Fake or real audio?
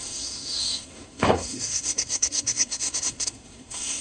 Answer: fake